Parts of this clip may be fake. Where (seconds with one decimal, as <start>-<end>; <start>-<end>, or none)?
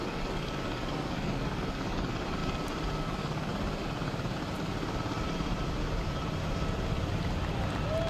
0.0-2.4; 3.0-3.5